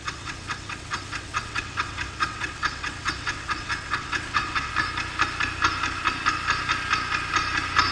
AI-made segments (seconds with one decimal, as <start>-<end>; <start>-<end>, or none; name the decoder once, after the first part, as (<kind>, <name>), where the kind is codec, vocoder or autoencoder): 0.0-4.7 (vocoder, WaveNeXt)